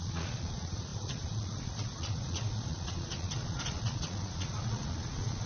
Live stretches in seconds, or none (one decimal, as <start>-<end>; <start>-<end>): none